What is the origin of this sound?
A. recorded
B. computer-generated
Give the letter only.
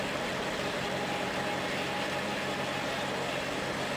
A